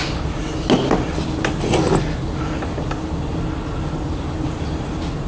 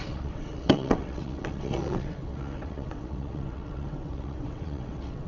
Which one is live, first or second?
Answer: first